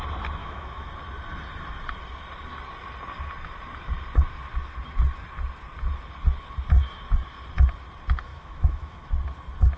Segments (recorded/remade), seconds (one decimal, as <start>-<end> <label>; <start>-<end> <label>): 0.0-0.4 recorded; 0.4-0.9 remade; 0.9-8.3 recorded; 8.3-9.1 remade; 9.1-9.8 recorded